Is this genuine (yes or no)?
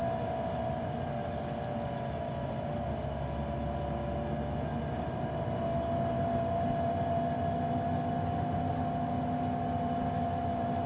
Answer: yes